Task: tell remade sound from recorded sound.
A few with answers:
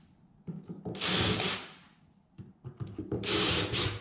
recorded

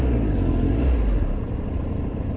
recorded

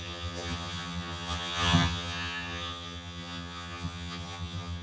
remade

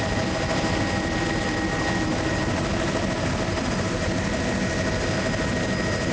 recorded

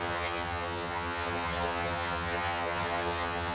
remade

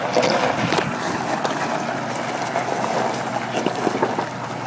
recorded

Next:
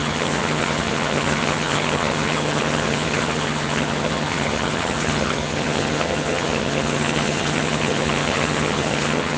remade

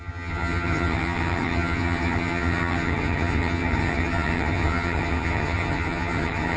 remade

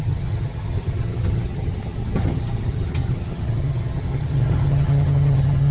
remade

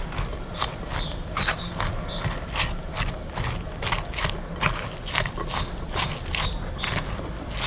recorded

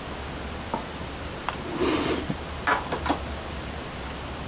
recorded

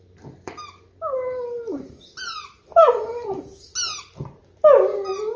recorded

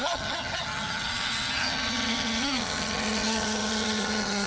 remade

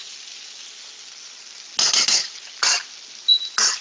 recorded